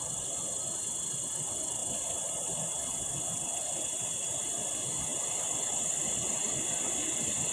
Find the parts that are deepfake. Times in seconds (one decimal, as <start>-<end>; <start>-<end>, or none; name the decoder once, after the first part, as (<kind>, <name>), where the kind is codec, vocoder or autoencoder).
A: none